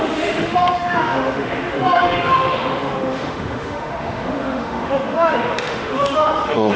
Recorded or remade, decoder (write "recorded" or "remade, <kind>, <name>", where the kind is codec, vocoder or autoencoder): remade, autoencoder, DAC-VAE